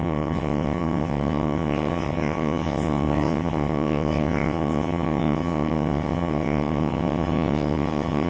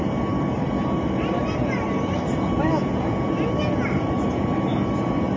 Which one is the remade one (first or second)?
first